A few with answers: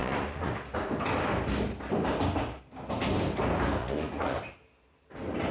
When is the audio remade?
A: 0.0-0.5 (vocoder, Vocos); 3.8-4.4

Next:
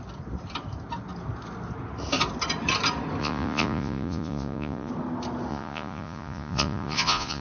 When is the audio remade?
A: 3.2-4.9 (vocoder, Vocos); 5.5-7.4